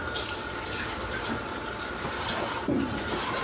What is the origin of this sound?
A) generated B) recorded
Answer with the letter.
A